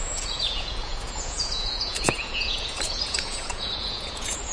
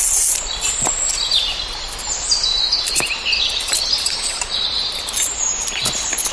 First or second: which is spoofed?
first